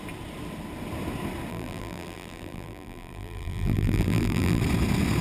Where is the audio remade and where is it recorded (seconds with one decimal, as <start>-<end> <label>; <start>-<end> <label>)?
0.0-1.5 recorded; 1.5-4.6 remade; 4.6-5.2 recorded